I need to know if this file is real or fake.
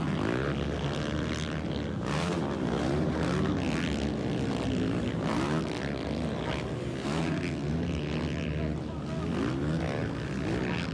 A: real